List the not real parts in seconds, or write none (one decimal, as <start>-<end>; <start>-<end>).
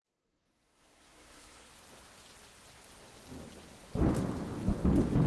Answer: 0.0-1.7